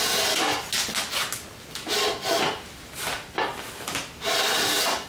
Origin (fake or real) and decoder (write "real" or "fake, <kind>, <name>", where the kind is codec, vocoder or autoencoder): real